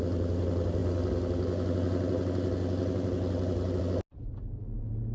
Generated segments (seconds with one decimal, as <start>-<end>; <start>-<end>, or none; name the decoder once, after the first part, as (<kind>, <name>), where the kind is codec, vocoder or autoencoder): none